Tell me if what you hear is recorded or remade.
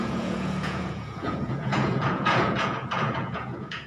remade